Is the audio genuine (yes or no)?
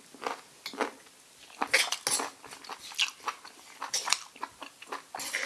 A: yes